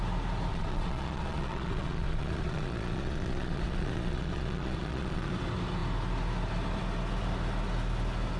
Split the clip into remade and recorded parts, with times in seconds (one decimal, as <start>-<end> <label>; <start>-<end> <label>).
0.0-0.5 recorded; 0.5-5.3 remade; 5.3-8.4 recorded